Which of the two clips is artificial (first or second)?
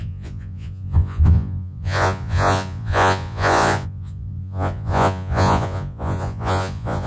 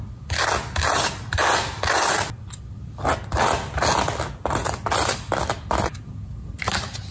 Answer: first